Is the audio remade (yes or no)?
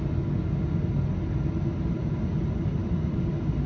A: no